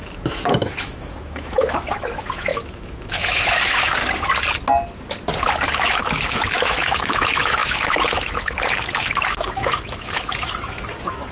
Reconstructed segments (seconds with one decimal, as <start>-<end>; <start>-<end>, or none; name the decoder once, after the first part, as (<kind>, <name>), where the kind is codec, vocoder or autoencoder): 0.0-4.0 (autoencoder, DAC-VAE); 5.8-11.3